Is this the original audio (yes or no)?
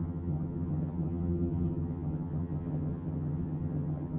no